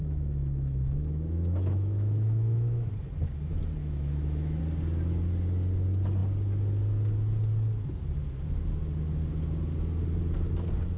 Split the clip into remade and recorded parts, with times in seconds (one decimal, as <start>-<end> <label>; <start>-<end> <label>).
0.0-2.9 remade; 2.9-3.8 recorded; 3.8-4.6 remade; 4.6-11.0 recorded

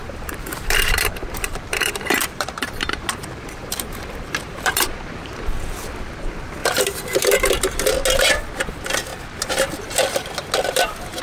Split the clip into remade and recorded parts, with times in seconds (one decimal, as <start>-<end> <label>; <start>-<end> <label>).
0.0-4.9 remade; 4.9-6.6 recorded; 6.6-7.4 remade; 7.4-11.2 recorded

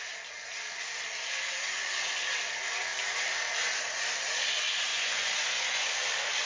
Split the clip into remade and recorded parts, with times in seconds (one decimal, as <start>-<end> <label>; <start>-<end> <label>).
0.0-4.9 recorded; 4.9-5.9 remade; 5.9-6.5 recorded

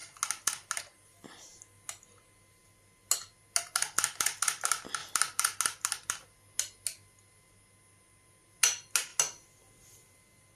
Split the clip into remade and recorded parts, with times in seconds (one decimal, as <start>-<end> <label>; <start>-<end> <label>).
0.0-5.0 recorded; 5.0-5.6 remade; 5.6-10.6 recorded

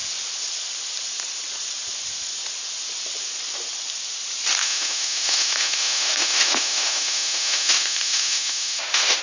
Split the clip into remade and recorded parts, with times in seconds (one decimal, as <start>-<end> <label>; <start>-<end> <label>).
0.0-4.6 recorded; 4.6-9.2 remade

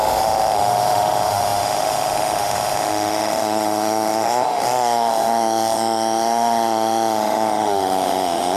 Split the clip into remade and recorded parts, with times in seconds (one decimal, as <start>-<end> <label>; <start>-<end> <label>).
0.0-8.6 remade